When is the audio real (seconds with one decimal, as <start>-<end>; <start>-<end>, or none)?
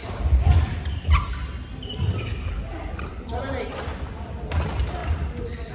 0.0-5.7